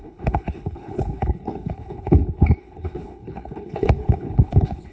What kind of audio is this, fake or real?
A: fake